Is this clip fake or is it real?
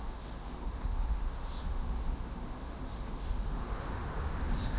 fake